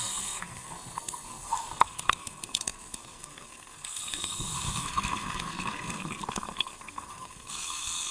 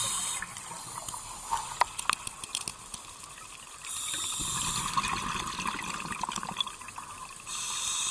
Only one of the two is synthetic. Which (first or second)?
first